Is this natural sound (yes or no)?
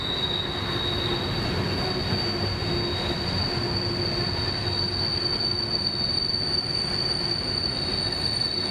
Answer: yes